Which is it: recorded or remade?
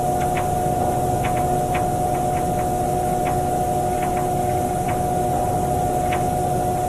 recorded